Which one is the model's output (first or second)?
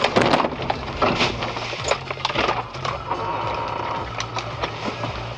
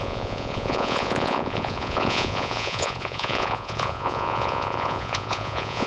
second